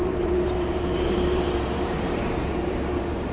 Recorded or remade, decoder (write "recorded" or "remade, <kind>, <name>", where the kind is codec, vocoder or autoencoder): remade, vocoder, BigVGAN v2